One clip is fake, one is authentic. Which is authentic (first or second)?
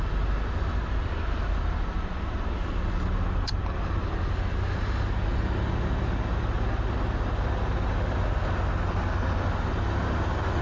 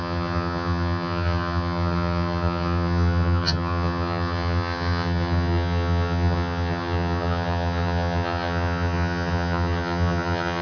first